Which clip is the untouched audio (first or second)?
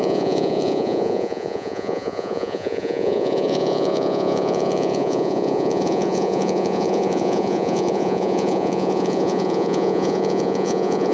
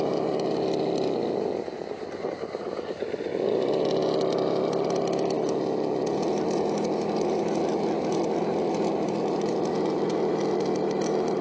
second